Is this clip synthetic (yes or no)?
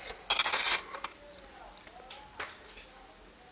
no